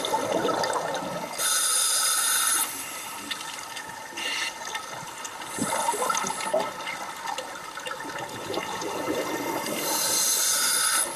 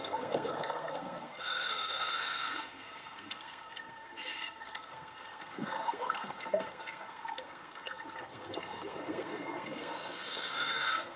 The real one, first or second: first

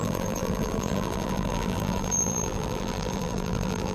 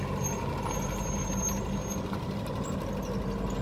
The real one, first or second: second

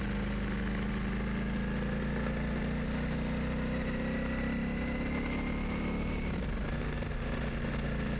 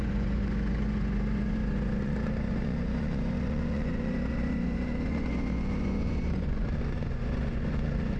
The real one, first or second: first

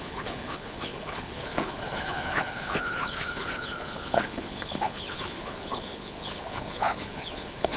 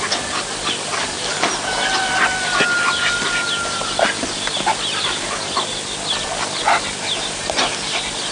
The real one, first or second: second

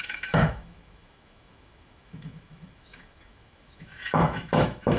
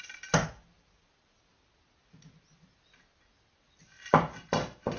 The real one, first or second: second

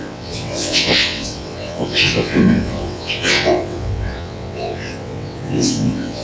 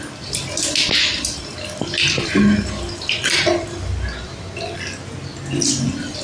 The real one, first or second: second